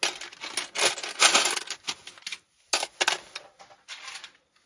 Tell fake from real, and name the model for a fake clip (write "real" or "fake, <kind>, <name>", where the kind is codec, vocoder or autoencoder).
real